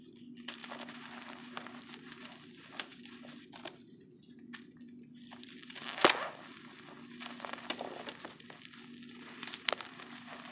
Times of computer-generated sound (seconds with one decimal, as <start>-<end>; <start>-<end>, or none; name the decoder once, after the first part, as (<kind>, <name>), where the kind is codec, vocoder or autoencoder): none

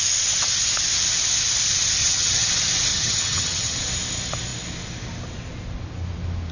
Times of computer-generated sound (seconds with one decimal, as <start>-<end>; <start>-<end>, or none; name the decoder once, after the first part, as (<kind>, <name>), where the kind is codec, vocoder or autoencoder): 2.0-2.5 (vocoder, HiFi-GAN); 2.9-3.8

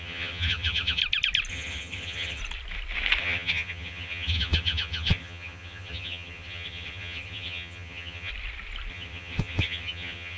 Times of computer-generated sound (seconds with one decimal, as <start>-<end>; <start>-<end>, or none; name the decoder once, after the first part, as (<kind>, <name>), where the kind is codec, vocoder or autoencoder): 0.0-1.0 (vocoder, HiFi-GAN); 1.5-2.4; 3.2-8.3; 8.9-10.4

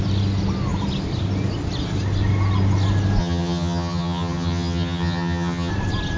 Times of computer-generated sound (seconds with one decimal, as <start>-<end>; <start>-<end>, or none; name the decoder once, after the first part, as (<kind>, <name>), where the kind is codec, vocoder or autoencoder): 3.2-5.7 (vocoder, HiFi-GAN)

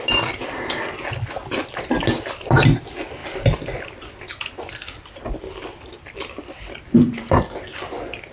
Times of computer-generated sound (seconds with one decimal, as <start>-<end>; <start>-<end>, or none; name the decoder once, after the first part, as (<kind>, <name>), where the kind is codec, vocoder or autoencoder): none

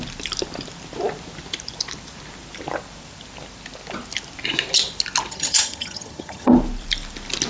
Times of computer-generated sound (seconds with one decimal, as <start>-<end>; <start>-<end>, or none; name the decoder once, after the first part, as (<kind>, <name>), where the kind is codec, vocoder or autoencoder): 5.3-6.5 (vocoder, HiFi-GAN)

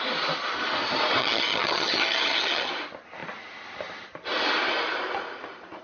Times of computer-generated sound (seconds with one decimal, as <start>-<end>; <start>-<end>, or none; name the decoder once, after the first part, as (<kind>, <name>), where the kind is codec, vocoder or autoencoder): 1.2-2.7 (vocoder, HiFi-GAN)

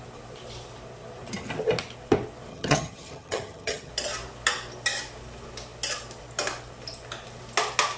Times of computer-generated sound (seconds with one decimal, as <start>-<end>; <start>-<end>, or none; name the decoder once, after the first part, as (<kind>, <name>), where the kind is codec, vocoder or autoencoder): 2.5-3.9 (vocoder, HiFi-GAN)